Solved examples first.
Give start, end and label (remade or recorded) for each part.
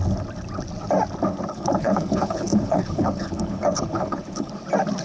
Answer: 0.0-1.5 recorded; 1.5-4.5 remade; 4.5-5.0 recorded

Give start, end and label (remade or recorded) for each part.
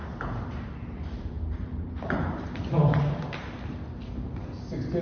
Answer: 0.0-3.0 remade; 3.0-5.0 recorded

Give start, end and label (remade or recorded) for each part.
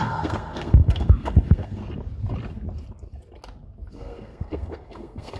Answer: 0.0-1.8 remade; 1.8-3.9 recorded; 3.9-5.4 remade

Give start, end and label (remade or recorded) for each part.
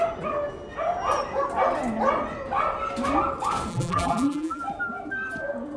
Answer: 0.0-3.7 recorded; 3.7-4.6 remade; 4.6-5.8 recorded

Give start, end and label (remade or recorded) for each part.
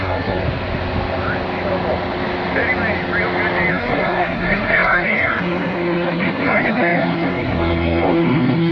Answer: 0.0-0.4 remade; 0.4-3.7 recorded; 3.7-8.7 remade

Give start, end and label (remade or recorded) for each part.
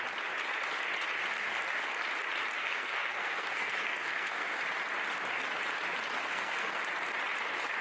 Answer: 0.0-2.6 recorded; 2.6-4.6 remade; 4.6-6.2 recorded; 6.2-6.8 remade; 6.8-7.8 recorded